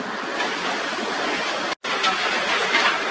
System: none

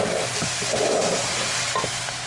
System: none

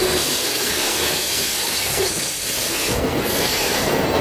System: codec, SNAC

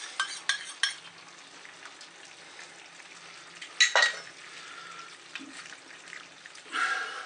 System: none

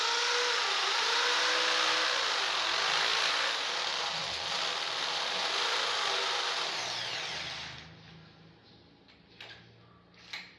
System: none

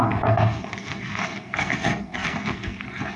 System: codec, SNAC